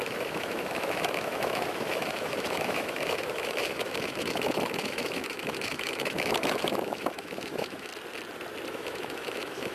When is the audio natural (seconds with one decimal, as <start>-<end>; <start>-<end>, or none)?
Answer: 7.9-8.7